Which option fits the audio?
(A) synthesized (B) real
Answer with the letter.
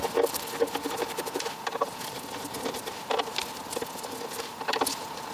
A